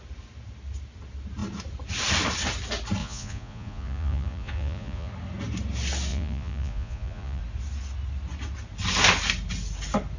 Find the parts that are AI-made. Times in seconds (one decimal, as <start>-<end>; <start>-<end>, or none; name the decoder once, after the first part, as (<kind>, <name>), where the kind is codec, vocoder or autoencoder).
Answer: 3.0-5.1 (vocoder, Vocos); 6.1-7.4